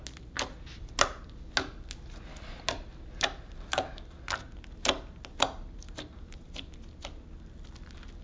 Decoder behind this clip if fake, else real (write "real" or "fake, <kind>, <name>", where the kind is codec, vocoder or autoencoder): real